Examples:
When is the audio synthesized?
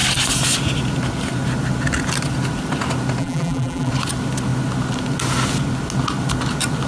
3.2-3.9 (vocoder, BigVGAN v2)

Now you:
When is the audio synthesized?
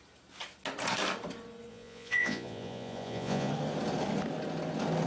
1.7-3.5 (vocoder, Vocos)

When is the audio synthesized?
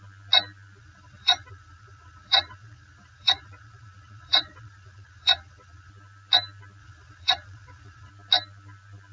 0.8-5.9 (vocoder, Vocos); 6.8-8.1